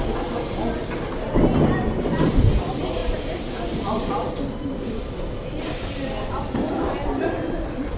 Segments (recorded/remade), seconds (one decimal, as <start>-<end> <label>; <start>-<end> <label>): 0.0-8.0 remade